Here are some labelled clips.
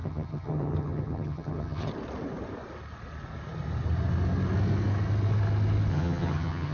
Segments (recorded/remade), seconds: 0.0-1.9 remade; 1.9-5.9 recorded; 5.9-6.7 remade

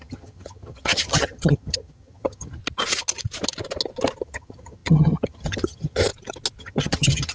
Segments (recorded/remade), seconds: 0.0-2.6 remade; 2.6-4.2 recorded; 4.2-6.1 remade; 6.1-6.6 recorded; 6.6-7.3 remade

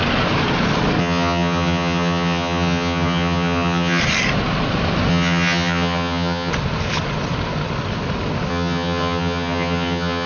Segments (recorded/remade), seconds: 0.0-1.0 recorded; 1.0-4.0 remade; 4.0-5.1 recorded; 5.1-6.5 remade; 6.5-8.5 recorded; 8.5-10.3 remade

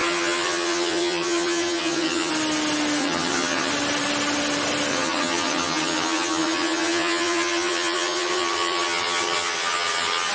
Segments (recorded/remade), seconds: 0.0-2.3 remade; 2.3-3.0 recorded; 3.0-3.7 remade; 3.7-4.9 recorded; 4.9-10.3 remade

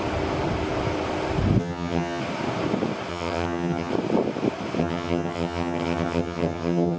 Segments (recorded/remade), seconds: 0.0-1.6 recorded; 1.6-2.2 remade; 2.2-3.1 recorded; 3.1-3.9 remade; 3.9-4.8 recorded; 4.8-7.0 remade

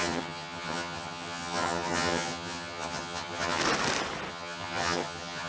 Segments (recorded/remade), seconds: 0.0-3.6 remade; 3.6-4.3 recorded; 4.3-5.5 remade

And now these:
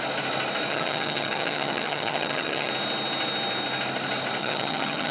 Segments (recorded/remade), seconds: 0.0-0.7 recorded; 0.7-2.7 remade; 2.7-4.4 recorded; 4.4-5.1 remade

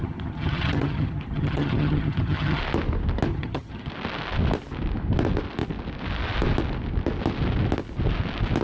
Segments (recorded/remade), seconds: 0.0-2.6 remade; 2.6-3.3 recorded; 3.3-3.9 remade; 3.9-8.6 recorded